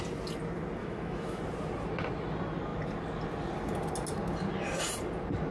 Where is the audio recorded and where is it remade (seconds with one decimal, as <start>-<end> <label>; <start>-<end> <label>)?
0.0-0.8 recorded; 0.8-1.4 remade; 1.4-5.5 recorded